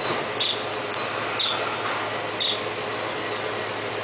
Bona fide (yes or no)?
yes